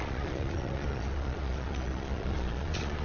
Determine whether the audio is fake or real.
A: fake